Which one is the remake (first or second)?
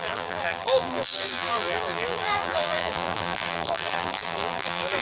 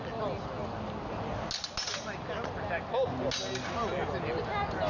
first